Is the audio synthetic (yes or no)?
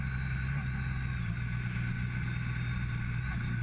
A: no